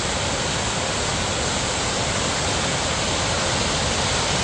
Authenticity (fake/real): real